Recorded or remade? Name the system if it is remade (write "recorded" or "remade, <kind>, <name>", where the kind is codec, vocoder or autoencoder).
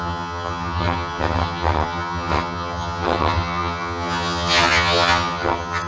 remade, vocoder, HiFi-GAN